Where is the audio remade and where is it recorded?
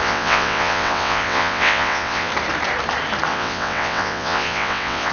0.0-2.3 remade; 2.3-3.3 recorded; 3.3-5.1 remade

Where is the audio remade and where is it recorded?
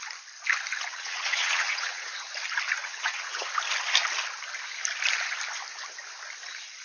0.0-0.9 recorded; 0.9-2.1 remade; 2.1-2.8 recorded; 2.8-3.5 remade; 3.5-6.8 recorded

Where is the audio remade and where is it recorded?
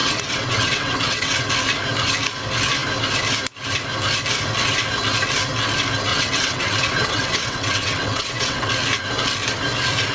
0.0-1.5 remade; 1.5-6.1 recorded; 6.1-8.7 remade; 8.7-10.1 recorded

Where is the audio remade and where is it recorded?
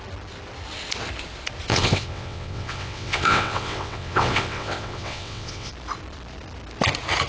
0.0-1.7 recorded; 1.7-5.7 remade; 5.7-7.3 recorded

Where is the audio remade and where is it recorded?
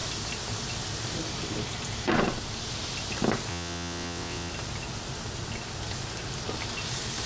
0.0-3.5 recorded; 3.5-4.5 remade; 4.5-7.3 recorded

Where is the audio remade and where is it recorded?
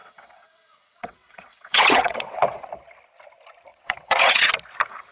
0.0-2.7 remade; 2.7-3.7 recorded; 3.7-4.5 remade; 4.5-5.1 recorded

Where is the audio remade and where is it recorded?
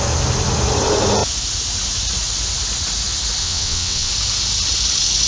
0.0-3.4 recorded; 3.4-4.1 remade; 4.1-5.3 recorded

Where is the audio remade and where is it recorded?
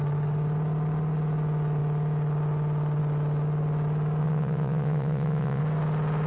0.0-4.2 recorded; 4.2-5.6 remade; 5.6-6.3 recorded